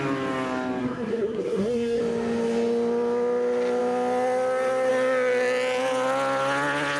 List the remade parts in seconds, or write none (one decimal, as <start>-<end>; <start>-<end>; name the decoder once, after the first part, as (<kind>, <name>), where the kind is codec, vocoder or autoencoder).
0.8-2.0 (codec, SNAC)